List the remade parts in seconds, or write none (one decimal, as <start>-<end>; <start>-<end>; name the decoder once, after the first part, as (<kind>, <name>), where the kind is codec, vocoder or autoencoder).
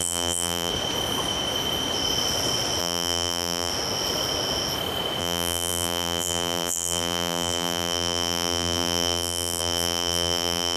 0.0-0.7 (vocoder, BigVGAN v2); 2.8-3.7; 5.2-10.8